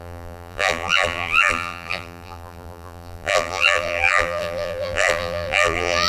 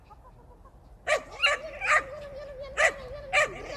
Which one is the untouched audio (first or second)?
second